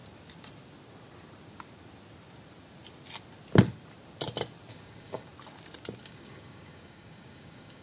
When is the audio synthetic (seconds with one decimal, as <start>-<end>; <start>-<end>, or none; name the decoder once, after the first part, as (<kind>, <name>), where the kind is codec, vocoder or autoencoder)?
4.7-5.3 (codec, DAC); 6.0-7.8